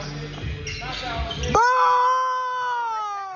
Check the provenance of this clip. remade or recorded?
recorded